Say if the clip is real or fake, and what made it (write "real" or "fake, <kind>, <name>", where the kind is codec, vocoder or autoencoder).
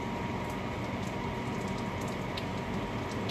real